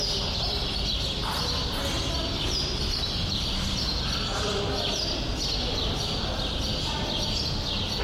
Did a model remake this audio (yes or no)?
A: no